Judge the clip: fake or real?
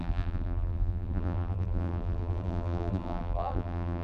fake